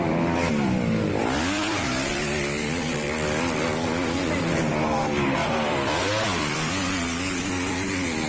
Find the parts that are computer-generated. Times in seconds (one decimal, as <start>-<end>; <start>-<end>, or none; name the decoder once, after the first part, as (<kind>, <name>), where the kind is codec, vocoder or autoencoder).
1.2-1.8 (vocoder, BigVGAN v2); 5.4-6.7